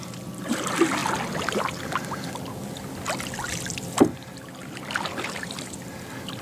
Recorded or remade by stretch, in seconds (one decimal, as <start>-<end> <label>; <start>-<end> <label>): 0.0-6.4 recorded